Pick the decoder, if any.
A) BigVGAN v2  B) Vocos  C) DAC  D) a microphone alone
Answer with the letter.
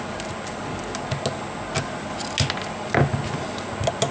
D